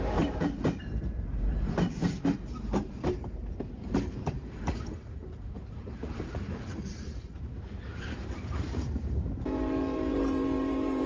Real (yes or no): no